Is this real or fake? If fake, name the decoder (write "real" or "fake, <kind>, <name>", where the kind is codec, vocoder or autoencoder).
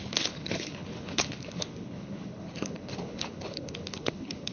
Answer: fake, codec, HILCodec